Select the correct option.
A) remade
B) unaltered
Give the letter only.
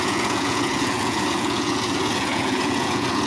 A